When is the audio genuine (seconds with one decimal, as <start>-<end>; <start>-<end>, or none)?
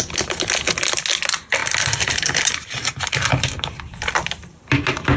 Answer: 0.0-1.6; 4.6-5.2